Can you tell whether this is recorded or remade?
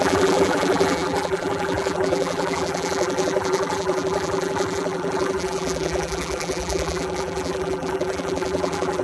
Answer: remade